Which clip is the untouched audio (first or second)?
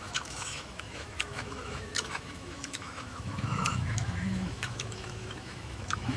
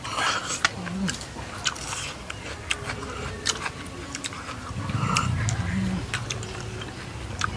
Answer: second